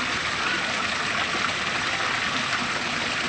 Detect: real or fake real